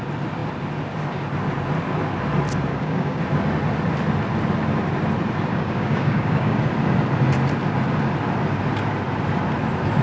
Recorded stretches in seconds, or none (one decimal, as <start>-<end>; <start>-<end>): 0.0-2.7; 3.2-5.5; 6.6-10.0